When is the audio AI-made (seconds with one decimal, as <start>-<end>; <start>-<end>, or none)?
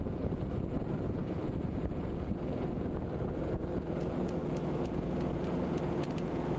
0.0-6.6